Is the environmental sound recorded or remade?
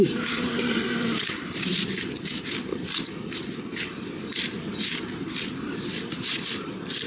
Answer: remade